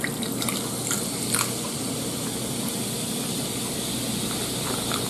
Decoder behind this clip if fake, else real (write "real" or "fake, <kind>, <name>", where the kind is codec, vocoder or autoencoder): real